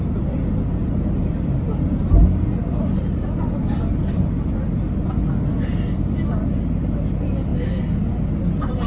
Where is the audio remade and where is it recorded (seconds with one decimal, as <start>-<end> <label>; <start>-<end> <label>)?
0.0-8.9 recorded